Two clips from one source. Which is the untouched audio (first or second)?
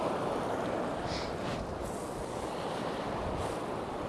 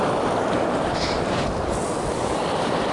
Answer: first